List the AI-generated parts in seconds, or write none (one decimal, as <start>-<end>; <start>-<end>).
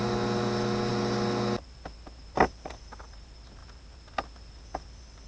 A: none